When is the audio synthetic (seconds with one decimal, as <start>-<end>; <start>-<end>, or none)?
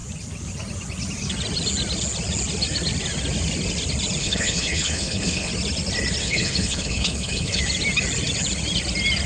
4.2-5.5; 6.2-7.6